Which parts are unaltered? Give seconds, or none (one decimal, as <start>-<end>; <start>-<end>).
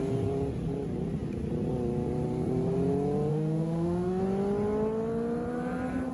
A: 0.0-3.3; 4.2-6.1